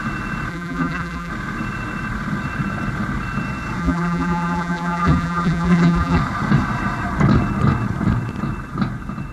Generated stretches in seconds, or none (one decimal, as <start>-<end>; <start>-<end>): 0.5-1.3; 3.8-6.2